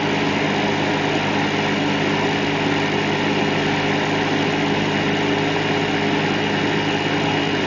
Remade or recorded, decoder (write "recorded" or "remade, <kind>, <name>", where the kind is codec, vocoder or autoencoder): recorded